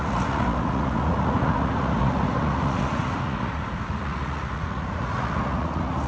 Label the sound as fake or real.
fake